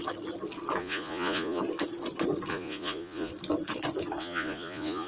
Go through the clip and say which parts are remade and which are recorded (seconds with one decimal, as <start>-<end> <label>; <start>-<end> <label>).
0.0-0.8 recorded; 0.8-1.6 remade; 1.6-2.5 recorded; 2.5-3.3 remade; 3.3-4.2 recorded; 4.2-5.1 remade